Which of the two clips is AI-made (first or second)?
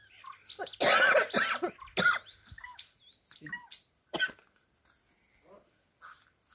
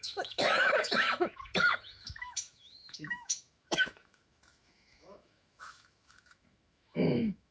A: second